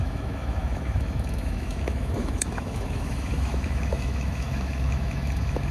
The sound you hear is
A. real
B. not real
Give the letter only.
B